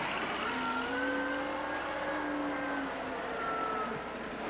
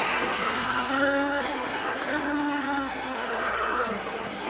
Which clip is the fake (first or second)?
second